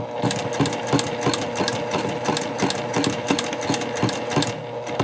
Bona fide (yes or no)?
yes